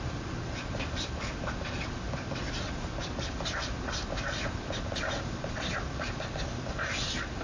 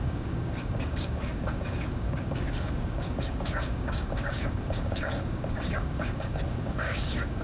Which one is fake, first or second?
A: second